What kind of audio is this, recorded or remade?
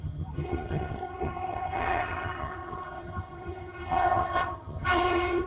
remade